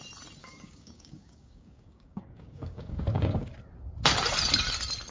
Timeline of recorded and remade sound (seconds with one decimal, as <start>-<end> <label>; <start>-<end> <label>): 0.0-0.4 recorded; 0.4-3.5 remade; 3.5-5.1 recorded